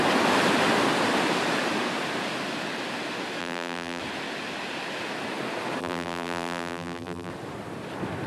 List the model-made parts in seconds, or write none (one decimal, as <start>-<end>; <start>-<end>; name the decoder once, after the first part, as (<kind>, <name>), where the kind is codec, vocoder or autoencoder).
3.4-4.0 (vocoder, BigVGAN v2); 5.8-7.3